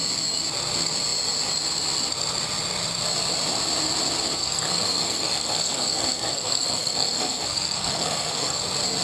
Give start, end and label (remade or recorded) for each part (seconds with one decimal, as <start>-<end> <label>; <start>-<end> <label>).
0.0-4.4 recorded; 4.4-8.6 remade; 8.6-9.0 recorded